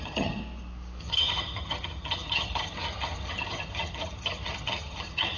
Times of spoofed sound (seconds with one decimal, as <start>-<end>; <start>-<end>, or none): 0.0-0.4; 1.0-5.4